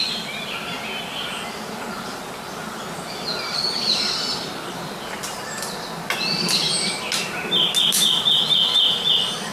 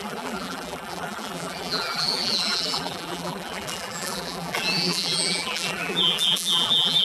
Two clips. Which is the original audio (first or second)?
first